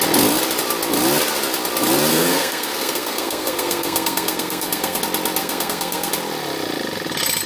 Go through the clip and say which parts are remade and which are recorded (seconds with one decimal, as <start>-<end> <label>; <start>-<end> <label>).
0.0-2.1 recorded; 2.1-5.0 remade; 5.0-5.4 recorded; 5.4-6.1 remade; 6.1-7.5 recorded